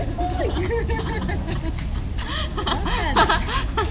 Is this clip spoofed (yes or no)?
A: no